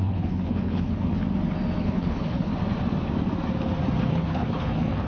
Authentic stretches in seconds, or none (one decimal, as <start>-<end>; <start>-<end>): 1.2-1.8; 2.5-4.1

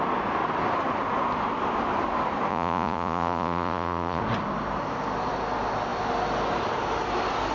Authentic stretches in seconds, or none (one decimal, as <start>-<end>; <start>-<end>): 0.0-2.5; 4.2-7.5

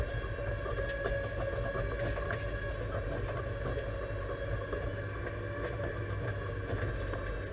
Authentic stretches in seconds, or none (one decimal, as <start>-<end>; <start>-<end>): 0.0-7.5

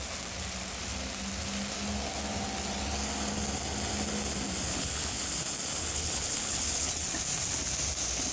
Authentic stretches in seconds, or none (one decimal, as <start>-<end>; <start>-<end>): 0.0-4.7; 5.2-5.8; 6.9-8.3